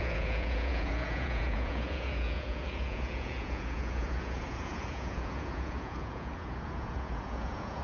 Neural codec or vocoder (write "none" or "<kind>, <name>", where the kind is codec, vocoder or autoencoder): vocoder, Vocos